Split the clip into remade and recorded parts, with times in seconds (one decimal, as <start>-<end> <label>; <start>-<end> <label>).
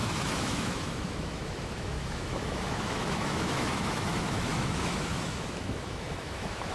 0.0-6.7 remade